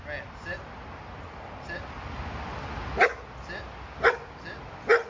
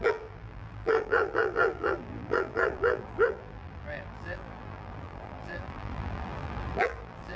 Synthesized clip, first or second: second